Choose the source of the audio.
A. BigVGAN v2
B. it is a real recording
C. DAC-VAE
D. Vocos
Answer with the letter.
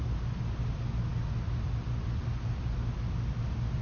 B